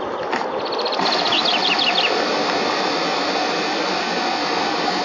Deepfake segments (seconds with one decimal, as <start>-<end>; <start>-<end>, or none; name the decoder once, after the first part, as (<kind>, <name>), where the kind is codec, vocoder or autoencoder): none